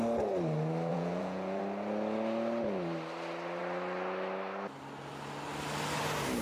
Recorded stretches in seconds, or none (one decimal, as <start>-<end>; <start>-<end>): 0.0-0.9; 1.6-6.4